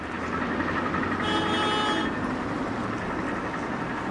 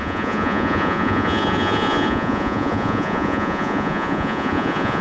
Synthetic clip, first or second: second